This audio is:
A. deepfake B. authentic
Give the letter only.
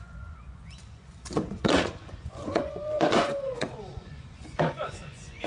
A